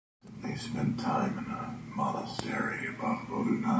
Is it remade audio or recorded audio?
recorded